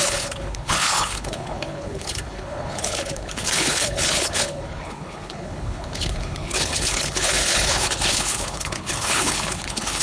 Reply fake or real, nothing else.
fake